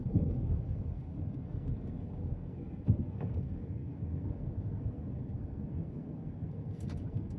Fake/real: fake